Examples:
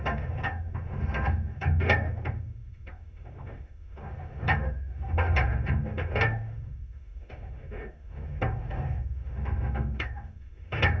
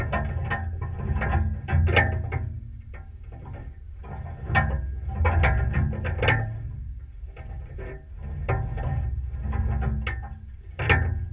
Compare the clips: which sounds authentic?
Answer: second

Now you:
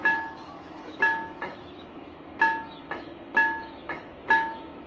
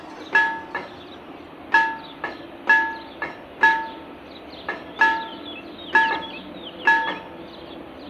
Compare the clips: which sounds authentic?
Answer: second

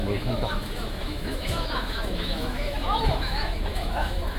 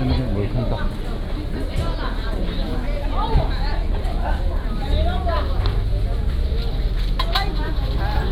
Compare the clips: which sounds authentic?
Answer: second